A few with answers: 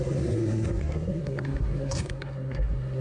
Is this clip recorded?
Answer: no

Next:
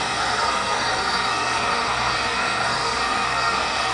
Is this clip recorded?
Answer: no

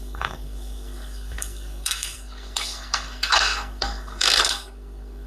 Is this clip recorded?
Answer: no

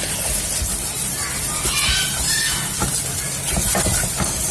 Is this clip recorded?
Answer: yes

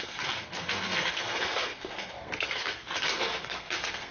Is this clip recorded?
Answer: no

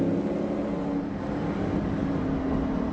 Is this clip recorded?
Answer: yes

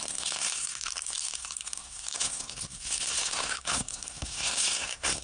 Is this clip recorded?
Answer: no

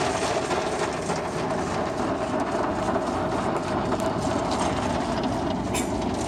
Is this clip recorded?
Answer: yes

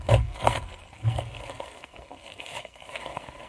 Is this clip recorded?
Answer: no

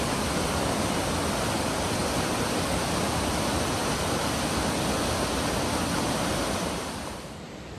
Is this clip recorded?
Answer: yes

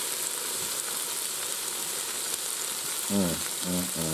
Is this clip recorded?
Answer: yes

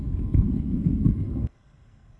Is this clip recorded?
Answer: no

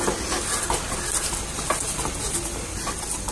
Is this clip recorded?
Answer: yes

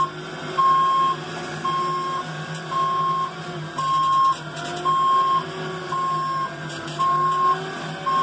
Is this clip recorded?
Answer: yes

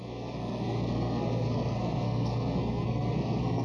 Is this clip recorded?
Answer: no